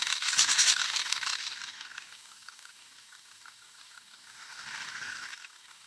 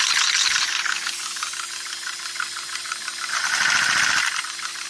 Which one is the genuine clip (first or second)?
second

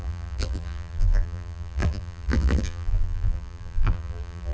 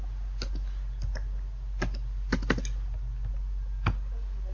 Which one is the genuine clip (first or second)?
second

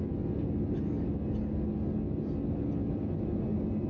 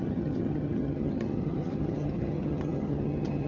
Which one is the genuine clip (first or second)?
first